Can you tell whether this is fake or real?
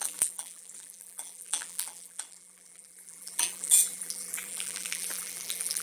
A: fake